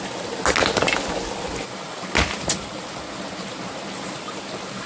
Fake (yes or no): no